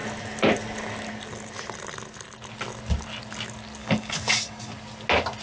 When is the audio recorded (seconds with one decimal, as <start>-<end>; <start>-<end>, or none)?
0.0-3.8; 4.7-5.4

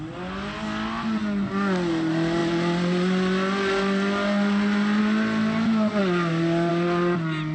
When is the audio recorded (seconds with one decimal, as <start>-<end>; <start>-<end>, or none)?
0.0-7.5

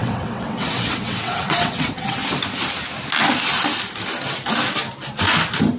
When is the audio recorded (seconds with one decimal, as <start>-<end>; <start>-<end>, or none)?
2.2-5.8

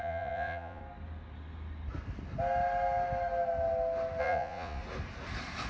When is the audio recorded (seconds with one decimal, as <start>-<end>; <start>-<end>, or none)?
0.8-4.2; 4.8-5.7